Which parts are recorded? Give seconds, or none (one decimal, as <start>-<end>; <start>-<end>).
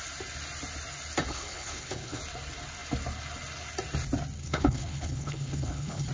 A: 0.0-1.3; 2.2-4.4